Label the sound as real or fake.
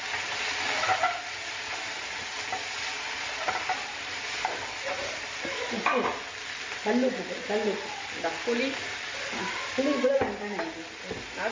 real